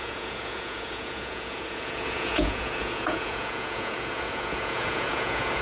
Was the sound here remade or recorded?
remade